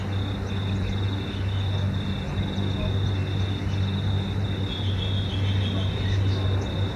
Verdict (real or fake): real